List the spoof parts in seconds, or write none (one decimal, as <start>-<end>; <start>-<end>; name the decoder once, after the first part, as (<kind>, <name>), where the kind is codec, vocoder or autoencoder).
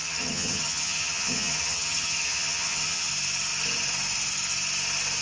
0.0-3.1 (vocoder, HiFi-GAN)